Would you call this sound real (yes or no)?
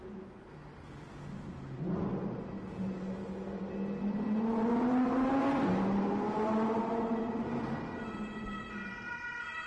yes